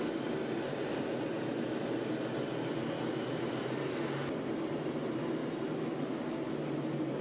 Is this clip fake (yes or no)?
no